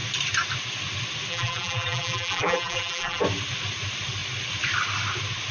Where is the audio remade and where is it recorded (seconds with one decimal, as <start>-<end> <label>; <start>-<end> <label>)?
0.0-1.3 recorded; 1.3-3.2 remade; 3.2-5.5 recorded